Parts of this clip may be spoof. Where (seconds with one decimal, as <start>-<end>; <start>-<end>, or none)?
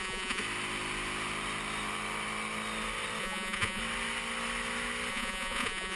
0.0-0.4; 3.2-3.8; 5.1-6.0